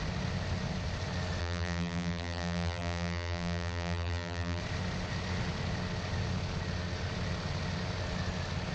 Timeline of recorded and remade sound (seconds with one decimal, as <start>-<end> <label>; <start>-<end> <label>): 0.0-1.4 recorded; 1.4-4.6 remade; 4.6-8.7 recorded